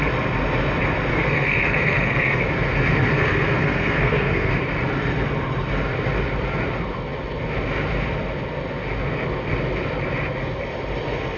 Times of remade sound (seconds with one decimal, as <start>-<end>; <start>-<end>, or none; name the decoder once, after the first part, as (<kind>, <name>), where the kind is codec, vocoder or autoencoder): 1.1-2.5 (codec, SNAC); 3.1-4.5